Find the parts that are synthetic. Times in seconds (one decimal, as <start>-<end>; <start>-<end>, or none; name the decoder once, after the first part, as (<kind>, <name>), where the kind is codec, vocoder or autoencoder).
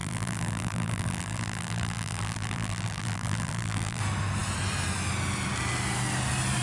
0.0-4.0 (vocoder, BigVGAN v2)